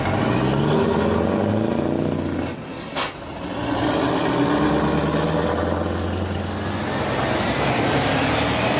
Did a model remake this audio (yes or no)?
no